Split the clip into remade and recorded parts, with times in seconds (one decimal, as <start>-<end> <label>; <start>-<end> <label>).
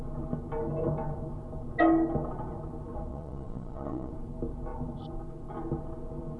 0.0-3.1 recorded; 3.1-4.1 remade; 4.1-6.4 recorded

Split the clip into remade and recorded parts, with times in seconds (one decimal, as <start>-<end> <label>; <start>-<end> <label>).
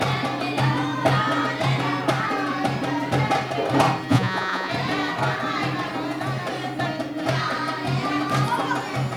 0.0-4.1 recorded; 4.1-4.7 remade; 4.7-9.2 recorded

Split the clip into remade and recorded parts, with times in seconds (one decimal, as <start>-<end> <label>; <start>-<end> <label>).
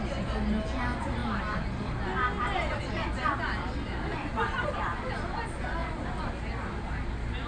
0.0-7.5 recorded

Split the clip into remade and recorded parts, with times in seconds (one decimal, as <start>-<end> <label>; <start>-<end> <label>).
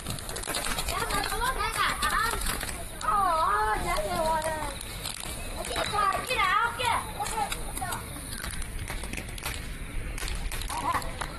0.0-0.5 recorded; 0.5-2.7 remade; 2.7-6.7 recorded; 6.7-8.1 remade; 8.1-11.4 recorded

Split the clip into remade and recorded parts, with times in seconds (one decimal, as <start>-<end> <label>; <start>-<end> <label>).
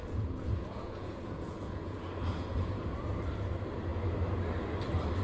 0.0-2.8 remade; 2.8-5.2 recorded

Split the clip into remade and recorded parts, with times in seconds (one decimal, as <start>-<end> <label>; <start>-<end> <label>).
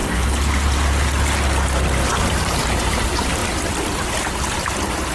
0.0-5.1 recorded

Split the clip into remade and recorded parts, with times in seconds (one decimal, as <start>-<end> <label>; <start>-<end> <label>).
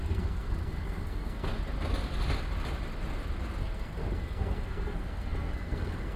0.0-1.5 remade; 1.5-3.6 recorded; 3.6-6.2 remade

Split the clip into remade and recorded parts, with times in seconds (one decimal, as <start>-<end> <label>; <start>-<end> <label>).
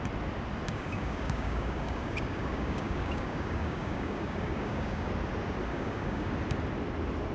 0.0-0.7 recorded; 0.7-5.1 remade; 5.1-5.7 recorded; 5.7-6.3 remade; 6.3-7.3 recorded